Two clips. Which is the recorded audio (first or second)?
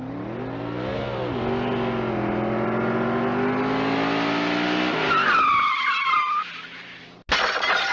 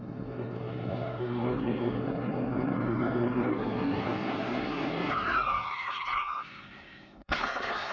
first